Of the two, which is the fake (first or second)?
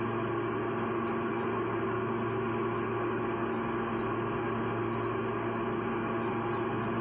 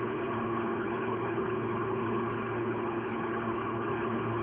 second